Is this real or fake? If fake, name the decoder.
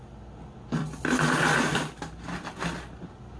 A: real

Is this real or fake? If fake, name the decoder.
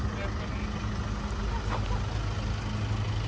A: real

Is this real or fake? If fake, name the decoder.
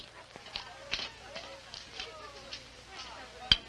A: real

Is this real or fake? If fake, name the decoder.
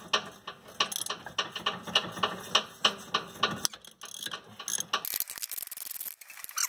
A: real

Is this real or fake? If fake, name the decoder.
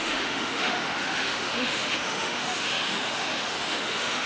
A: fake, autoencoder, DAC-VAE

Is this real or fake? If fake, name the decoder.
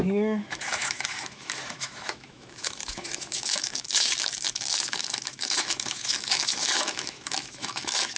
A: fake, autoencoder, DAC-VAE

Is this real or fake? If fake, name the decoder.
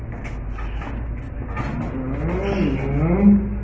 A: real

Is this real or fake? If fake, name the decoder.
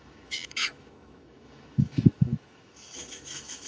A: fake, autoencoder, DAC-VAE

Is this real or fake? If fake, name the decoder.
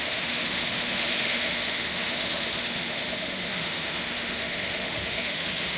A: fake, autoencoder, DAC-VAE